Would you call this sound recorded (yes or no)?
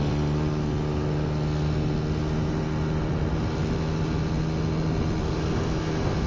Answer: yes